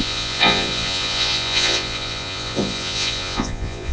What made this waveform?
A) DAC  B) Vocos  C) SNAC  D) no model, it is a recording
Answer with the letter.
B